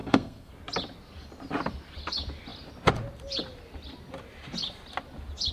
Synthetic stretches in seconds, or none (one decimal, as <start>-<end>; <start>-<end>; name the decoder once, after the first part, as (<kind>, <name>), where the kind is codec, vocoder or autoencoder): 0.0-0.5 (codec, SNAC)